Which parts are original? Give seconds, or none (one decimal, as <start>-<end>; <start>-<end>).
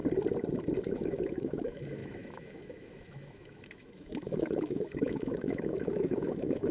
0.0-0.9